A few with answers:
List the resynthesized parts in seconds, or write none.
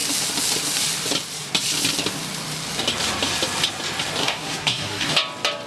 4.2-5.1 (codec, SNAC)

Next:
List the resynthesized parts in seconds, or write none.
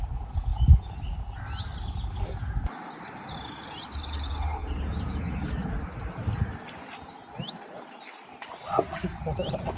4.6-5.4 (vocoder, Vocos)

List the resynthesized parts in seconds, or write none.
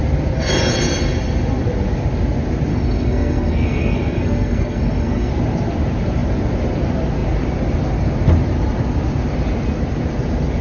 2.7-5.3 (codec, SNAC)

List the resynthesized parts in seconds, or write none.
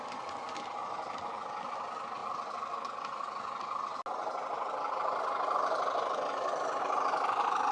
none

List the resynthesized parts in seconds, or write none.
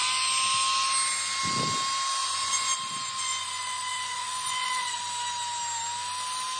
2.2-5.0 (vocoder, Vocos)